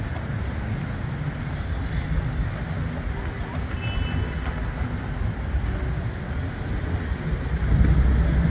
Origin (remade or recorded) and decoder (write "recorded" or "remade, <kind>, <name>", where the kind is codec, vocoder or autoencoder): recorded